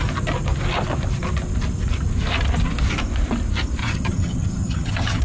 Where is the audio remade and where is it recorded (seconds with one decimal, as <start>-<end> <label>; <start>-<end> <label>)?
0.0-3.8 recorded; 3.8-5.2 remade